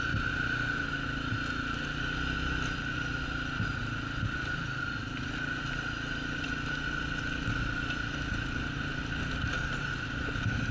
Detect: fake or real real